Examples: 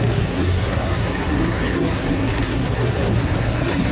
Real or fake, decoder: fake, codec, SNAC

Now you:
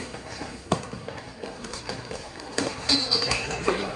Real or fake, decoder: fake, codec, SNAC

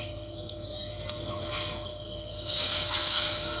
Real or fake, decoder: fake, codec, SNAC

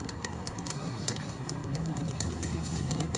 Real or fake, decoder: fake, codec, SNAC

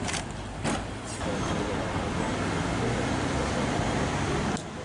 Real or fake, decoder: real